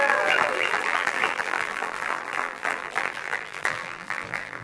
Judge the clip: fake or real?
fake